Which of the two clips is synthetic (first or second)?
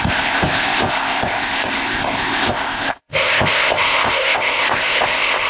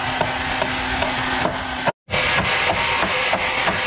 first